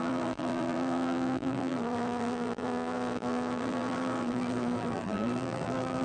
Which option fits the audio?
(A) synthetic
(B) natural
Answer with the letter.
A